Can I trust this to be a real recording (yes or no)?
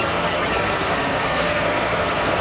no